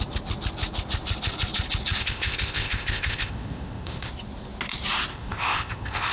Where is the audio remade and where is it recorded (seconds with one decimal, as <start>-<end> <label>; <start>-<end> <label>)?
0.0-2.0 recorded; 2.0-4.1 remade; 4.1-5.1 recorded; 5.1-6.1 remade

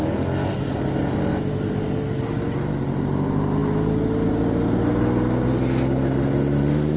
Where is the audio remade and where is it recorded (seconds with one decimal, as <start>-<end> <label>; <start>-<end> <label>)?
0.0-7.0 recorded

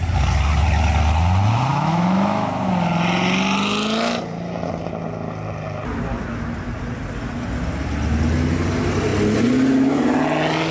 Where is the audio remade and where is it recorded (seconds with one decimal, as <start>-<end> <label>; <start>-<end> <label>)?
0.0-1.7 recorded; 1.7-2.7 remade; 2.7-10.7 recorded

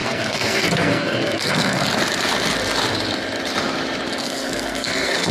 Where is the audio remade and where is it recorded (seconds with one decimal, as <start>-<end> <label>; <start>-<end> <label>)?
0.0-1.8 remade; 1.8-4.2 recorded; 4.2-5.3 remade

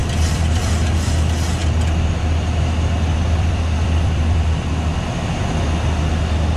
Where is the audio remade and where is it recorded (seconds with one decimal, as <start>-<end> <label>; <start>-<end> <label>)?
0.0-0.7 remade; 0.7-1.6 recorded; 1.6-4.7 remade; 4.7-6.6 recorded

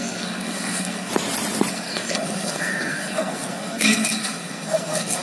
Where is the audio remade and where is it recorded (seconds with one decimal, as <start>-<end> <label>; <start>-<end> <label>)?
0.0-1.1 remade; 1.1-1.7 recorded; 1.7-5.2 remade